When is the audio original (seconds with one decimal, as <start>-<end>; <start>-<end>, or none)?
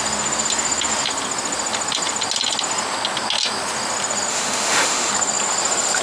0.0-4.3; 5.1-6.0